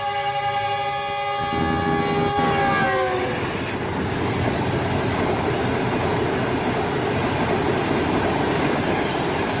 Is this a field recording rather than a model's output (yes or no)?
yes